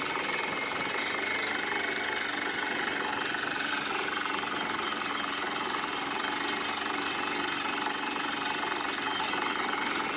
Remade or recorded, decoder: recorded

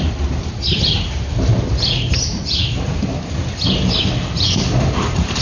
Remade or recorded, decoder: recorded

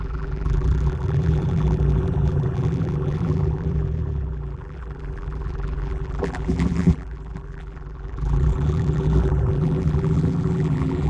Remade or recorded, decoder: remade, vocoder, BigVGAN v2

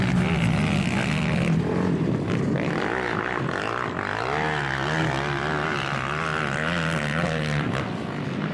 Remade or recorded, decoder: recorded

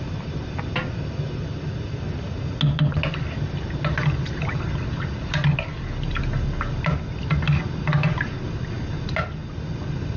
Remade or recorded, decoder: recorded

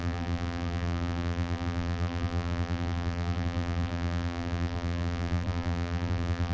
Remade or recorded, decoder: remade, vocoder, BigVGAN v2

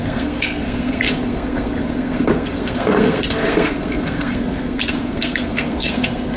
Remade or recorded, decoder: remade, codec, SNAC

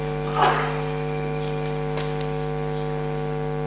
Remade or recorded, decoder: recorded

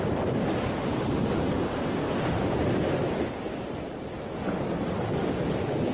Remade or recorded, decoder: recorded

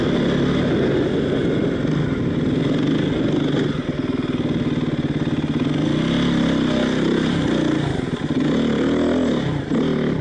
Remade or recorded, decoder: recorded